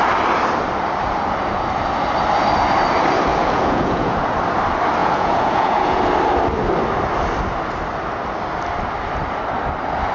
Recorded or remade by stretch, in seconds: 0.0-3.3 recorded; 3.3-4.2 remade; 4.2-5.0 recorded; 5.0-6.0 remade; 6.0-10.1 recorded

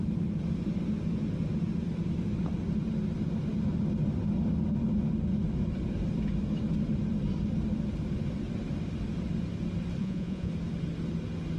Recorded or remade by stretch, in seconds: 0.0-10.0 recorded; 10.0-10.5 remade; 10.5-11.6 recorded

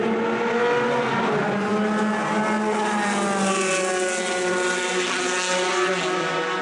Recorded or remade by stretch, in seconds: 0.0-6.6 recorded

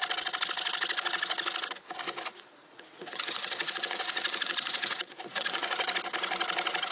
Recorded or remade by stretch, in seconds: 0.0-2.3 recorded; 2.3-5.9 remade; 5.9-6.9 recorded

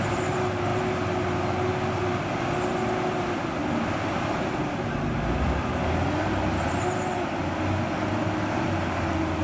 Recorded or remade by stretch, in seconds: 0.0-9.4 recorded

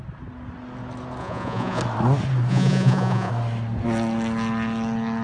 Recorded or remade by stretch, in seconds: 0.0-1.2 recorded; 1.2-1.8 remade; 1.8-2.5 recorded; 2.5-3.3 remade; 3.3-5.2 recorded

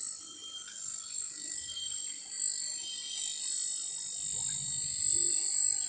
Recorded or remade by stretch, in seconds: 0.0-5.9 recorded